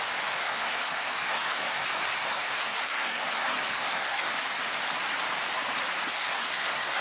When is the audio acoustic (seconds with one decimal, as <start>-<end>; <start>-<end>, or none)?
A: 0.0-0.4; 4.3-6.1